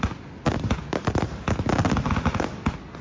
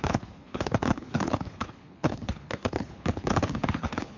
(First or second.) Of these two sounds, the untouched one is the first